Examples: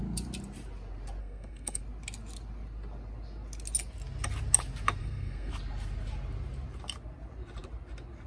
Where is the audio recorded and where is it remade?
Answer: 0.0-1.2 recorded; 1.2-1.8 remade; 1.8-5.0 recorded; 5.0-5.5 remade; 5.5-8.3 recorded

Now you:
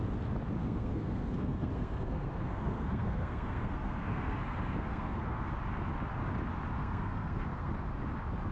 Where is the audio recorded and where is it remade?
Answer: 0.0-0.6 recorded; 0.6-5.5 remade; 5.5-6.8 recorded; 6.8-7.7 remade; 7.7-8.5 recorded

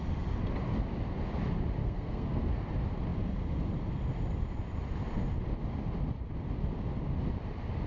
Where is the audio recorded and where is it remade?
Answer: 0.0-1.8 recorded; 1.8-2.4 remade; 2.4-7.9 recorded